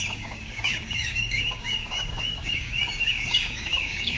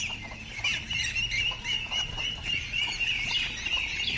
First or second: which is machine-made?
first